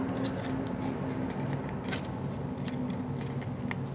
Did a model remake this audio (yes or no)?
no